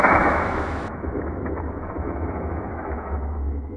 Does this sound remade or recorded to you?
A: remade